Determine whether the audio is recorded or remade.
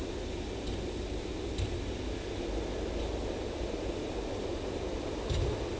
recorded